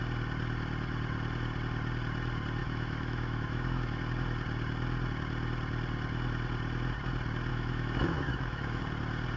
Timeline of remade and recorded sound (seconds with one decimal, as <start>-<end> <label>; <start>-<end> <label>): 0.0-2.6 recorded; 2.6-4.0 remade; 4.0-7.5 recorded; 7.5-8.8 remade; 8.8-9.4 recorded